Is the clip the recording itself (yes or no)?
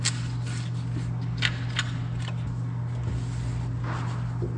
yes